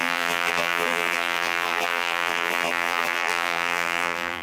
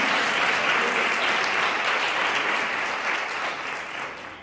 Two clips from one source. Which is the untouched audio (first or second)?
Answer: second